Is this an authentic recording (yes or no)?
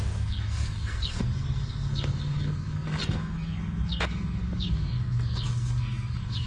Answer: no